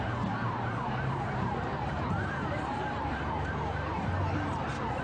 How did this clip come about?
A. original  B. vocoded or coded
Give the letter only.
B